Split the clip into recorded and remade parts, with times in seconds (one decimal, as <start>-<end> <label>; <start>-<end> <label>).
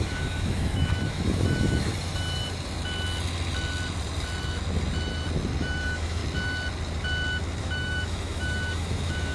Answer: 0.0-1.9 remade; 1.9-5.6 recorded; 5.6-6.2 remade; 6.2-7.6 recorded; 7.6-9.3 remade